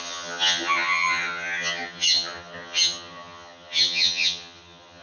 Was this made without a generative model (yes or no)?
no